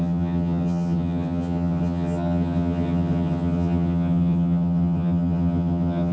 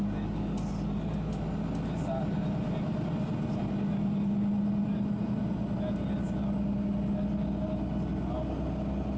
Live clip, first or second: second